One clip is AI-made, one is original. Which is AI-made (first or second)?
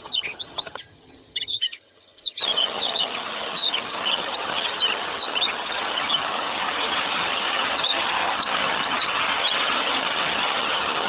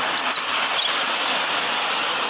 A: first